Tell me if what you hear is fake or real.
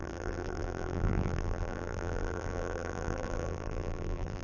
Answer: fake